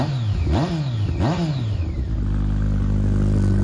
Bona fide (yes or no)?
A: yes